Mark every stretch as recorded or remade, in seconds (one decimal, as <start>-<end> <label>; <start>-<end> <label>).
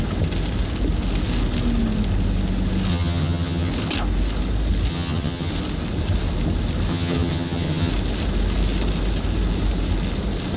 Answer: 0.0-2.9 recorded; 2.9-3.7 remade; 3.7-4.9 recorded; 4.9-5.5 remade; 5.5-6.9 recorded; 6.9-7.9 remade; 7.9-10.6 recorded